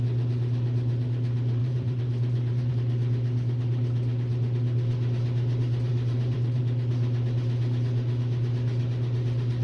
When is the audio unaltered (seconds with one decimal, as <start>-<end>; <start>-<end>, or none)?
0.0-1.6; 2.7-5.9; 6.6-9.6